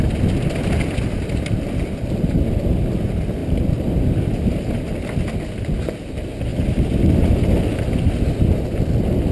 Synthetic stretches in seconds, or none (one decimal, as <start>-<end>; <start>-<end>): none